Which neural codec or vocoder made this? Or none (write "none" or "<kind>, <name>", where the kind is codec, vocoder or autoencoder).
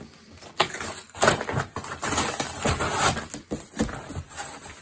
none